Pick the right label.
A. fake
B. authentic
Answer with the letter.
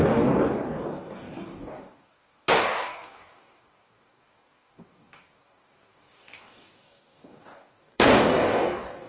A